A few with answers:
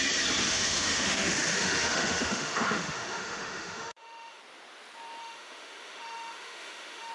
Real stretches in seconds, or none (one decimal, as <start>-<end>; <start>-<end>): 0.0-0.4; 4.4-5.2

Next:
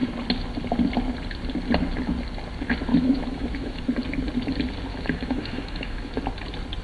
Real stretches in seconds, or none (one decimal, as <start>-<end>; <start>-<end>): 0.0-2.9; 3.8-4.9; 6.2-6.8

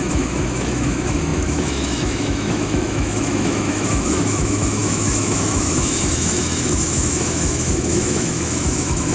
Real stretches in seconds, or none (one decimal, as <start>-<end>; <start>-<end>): none

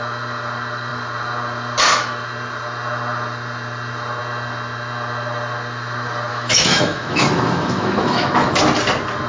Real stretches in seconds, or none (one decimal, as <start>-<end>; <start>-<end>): 0.0-6.3; 8.6-9.3

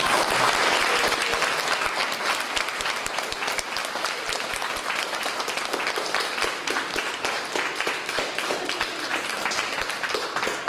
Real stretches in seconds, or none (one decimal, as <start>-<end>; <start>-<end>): 0.0-10.7

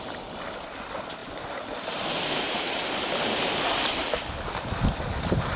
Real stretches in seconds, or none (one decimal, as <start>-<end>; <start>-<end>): 0.0-5.6

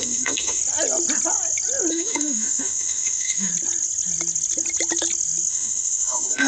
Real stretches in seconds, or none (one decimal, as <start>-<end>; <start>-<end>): 0.6-1.9; 3.5-5.5

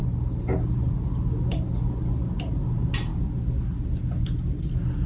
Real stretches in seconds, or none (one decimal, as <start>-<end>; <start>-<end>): 0.0-5.1